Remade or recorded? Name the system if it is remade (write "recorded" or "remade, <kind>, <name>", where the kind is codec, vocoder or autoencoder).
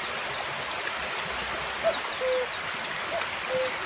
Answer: recorded